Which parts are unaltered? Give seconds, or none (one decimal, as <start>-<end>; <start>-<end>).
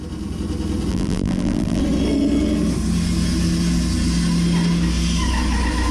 0.0-0.9; 1.8-5.9